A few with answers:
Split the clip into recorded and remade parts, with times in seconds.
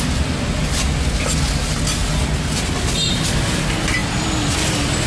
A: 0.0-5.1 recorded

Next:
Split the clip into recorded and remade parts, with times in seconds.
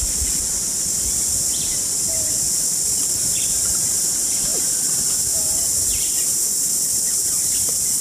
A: 0.0-8.0 recorded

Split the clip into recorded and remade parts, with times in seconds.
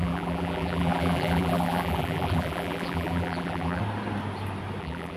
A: 0.0-3.8 remade; 3.8-4.8 recorded; 4.8-5.2 remade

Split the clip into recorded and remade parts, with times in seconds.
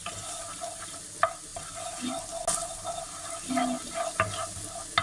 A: 0.0-1.0 remade; 1.0-5.0 recorded